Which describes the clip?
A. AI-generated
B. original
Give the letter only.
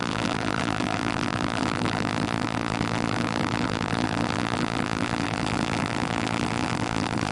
A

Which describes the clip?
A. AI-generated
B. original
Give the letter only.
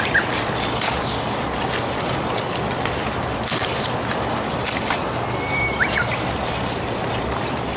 A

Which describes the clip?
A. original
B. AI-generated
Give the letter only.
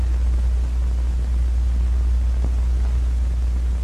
A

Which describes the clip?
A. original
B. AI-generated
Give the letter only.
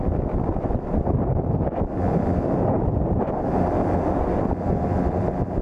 B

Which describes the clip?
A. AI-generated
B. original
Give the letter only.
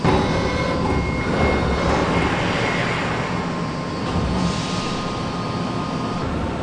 B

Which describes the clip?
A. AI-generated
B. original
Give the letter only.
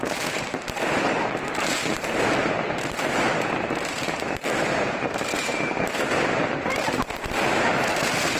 A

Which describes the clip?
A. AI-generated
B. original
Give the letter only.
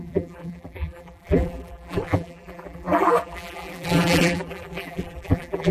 A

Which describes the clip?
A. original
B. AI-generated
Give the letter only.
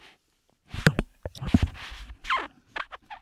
A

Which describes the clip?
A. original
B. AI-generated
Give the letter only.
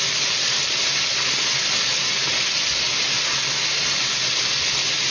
A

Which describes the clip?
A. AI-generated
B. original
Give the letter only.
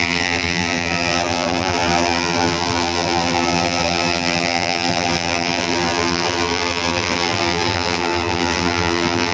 A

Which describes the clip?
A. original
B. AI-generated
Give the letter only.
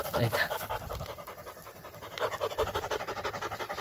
A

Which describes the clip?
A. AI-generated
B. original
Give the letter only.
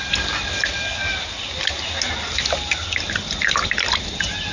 B